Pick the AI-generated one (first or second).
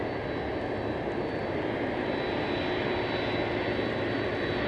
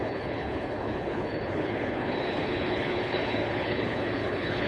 second